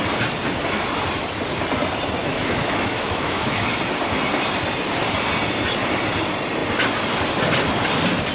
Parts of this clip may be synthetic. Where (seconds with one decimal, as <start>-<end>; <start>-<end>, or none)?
2.2-3.8